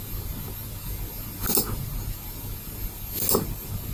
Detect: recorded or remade recorded